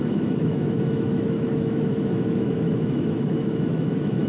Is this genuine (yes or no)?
no